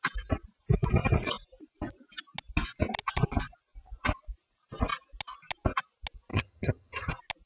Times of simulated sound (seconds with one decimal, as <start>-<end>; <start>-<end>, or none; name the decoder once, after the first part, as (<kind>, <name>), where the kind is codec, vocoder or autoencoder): 6.3-7.1 (vocoder, HiFi-GAN)